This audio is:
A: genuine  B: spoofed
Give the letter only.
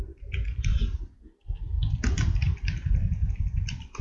B